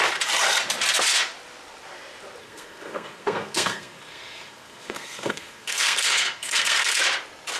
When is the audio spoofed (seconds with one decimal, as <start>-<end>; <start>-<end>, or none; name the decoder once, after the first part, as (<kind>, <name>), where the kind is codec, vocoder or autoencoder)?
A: 2.4-7.0 (codec, SNAC)